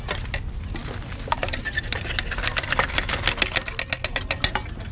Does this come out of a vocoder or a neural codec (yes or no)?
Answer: no